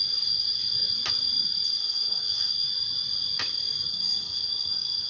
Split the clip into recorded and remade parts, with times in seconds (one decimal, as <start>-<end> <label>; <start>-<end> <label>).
0.0-1.8 recorded; 1.8-2.5 remade; 2.5-3.9 recorded; 3.9-5.1 remade

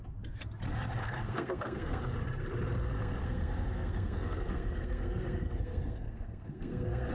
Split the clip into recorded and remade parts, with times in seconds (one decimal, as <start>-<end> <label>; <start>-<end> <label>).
0.0-1.0 recorded; 1.0-2.0 remade; 2.0-2.9 recorded; 2.9-7.1 remade

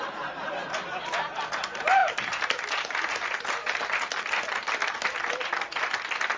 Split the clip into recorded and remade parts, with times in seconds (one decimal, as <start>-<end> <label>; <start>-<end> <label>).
0.0-6.4 recorded

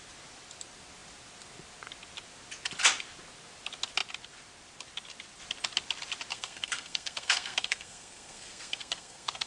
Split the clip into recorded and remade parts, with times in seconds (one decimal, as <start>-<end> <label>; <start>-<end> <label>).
0.0-6.3 recorded; 6.3-9.5 remade

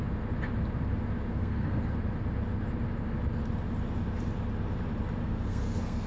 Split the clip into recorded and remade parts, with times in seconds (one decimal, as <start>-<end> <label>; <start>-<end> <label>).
0.0-1.3 recorded; 1.3-1.8 remade; 1.8-5.2 recorded; 5.2-6.1 remade

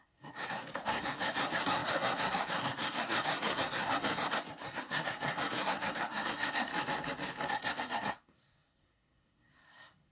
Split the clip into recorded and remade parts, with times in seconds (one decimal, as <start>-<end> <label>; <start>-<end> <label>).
0.0-6.7 remade; 6.7-7.5 recorded; 7.5-10.1 remade